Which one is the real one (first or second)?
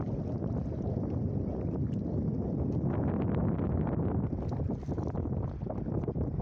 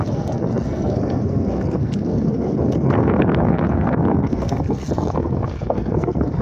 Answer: first